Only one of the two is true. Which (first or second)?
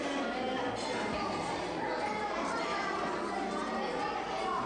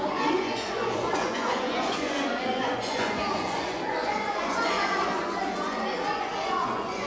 first